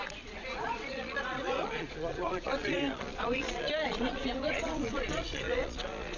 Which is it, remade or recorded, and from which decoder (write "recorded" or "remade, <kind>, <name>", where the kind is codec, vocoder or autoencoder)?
remade, vocoder, Vocos